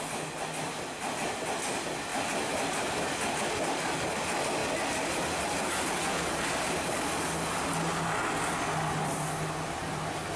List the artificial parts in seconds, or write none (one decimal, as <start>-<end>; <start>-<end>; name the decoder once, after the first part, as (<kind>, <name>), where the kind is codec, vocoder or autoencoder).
none